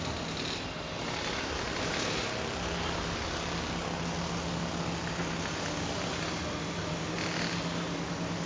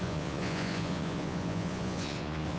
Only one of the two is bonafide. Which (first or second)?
first